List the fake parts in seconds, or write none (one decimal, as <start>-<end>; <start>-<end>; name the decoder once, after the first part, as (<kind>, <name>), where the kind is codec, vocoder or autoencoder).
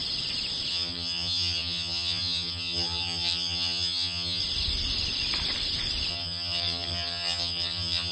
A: 0.7-4.4 (vocoder, HiFi-GAN); 6.1-8.1